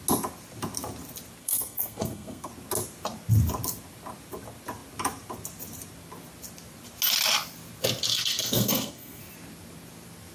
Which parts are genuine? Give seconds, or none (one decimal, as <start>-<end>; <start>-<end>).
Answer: 0.0-1.4; 2.5-8.1; 9.2-10.3